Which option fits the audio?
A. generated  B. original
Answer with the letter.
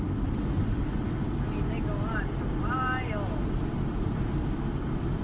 B